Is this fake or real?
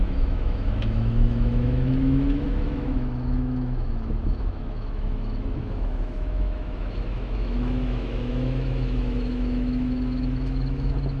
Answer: fake